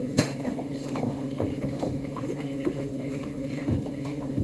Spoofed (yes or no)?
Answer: yes